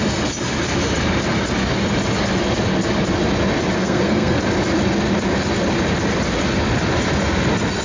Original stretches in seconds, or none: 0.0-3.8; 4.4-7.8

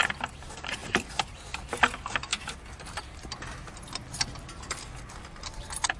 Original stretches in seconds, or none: 0.0-6.0